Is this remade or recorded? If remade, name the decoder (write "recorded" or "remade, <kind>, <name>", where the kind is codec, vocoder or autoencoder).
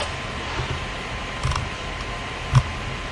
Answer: recorded